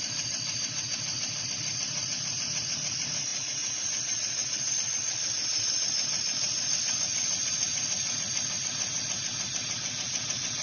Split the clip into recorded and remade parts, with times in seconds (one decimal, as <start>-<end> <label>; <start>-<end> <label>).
0.0-3.3 recorded; 3.3-4.7 remade; 4.7-10.6 recorded